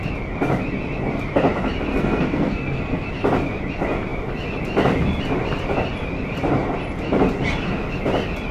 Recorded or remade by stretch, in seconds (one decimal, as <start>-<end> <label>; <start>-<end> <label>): 0.0-1.9 recorded; 1.9-3.1 remade; 3.1-8.5 recorded